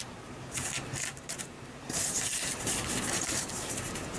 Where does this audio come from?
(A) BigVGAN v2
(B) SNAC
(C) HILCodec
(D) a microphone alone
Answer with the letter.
A